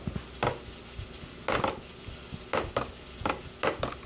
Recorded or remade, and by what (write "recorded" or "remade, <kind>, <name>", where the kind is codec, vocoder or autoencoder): recorded